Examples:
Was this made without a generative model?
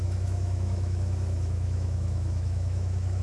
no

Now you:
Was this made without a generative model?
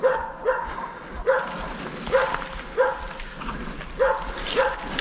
yes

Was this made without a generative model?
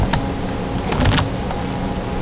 yes